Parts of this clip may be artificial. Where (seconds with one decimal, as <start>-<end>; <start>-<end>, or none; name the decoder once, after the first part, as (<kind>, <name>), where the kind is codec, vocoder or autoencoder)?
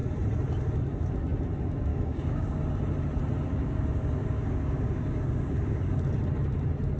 1.9-2.6 (codec, DAC); 3.5-5.9